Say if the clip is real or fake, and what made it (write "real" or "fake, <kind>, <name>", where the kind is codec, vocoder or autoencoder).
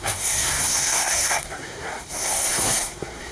fake, codec, SNAC